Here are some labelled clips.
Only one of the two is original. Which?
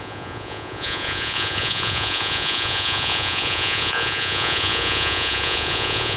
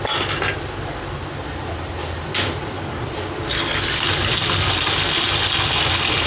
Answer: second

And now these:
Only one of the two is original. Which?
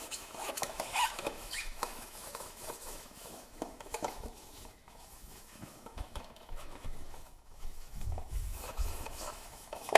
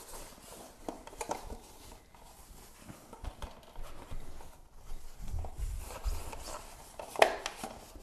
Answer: second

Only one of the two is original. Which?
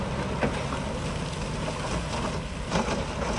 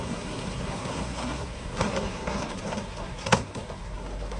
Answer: first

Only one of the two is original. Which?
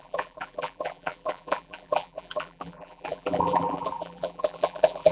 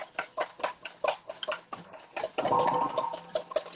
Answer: second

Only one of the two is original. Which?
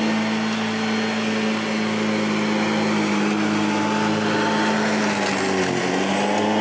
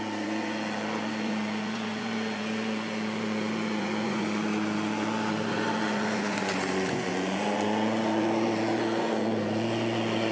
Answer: first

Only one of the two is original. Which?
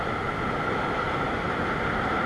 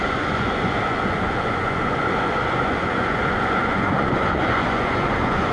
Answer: first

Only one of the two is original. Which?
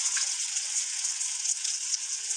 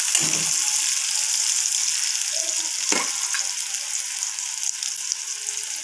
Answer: second